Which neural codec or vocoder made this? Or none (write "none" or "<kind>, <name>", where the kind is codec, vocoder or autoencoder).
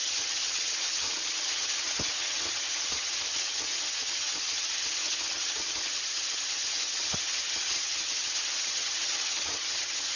vocoder, HiFi-GAN